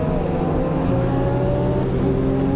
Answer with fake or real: real